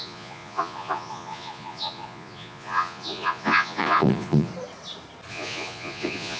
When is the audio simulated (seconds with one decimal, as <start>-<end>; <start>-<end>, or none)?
0.0-4.5; 5.3-6.4